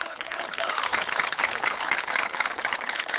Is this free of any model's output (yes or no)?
no